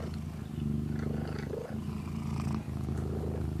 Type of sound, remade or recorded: recorded